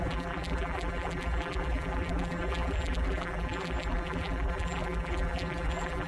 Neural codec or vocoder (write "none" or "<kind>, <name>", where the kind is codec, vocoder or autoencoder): vocoder, BigVGAN v2